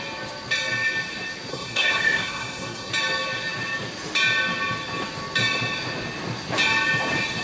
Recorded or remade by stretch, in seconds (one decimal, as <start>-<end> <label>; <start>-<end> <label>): 0.0-1.5 recorded; 1.5-2.9 remade; 2.9-7.4 recorded